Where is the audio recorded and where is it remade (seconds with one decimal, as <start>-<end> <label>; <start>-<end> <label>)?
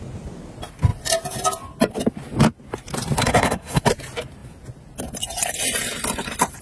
0.0-3.2 recorded; 3.2-3.8 remade; 3.8-6.6 recorded